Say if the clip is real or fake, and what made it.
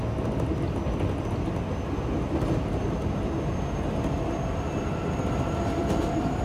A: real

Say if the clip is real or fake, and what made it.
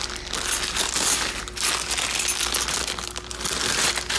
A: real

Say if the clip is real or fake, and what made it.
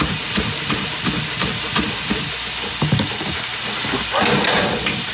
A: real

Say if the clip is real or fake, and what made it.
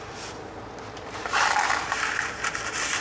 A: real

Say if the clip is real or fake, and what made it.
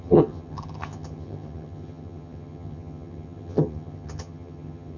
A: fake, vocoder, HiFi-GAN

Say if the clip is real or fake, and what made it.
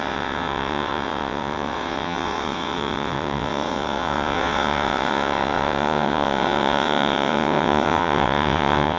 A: fake, vocoder, WaveNeXt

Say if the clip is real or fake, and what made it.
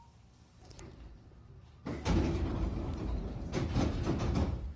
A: fake, vocoder, BigVGAN v2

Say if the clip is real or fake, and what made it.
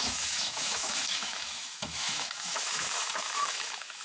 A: fake, autoencoder, DAC-VAE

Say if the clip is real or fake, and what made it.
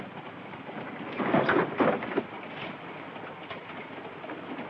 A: real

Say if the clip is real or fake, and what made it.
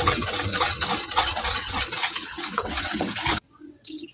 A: fake, vocoder, WaveNeXt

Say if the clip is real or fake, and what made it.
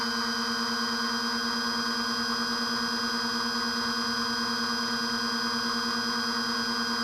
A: real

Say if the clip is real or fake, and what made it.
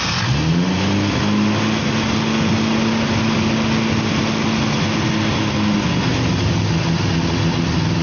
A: real